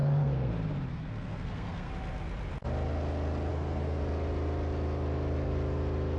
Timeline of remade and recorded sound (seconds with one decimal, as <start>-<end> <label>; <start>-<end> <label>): 0.0-0.5 remade; 0.5-0.9 recorded; 0.9-1.9 remade; 1.9-3.5 recorded; 3.5-4.0 remade; 4.0-6.2 recorded